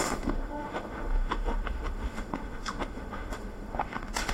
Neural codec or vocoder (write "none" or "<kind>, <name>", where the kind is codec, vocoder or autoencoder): autoencoder, DAC-VAE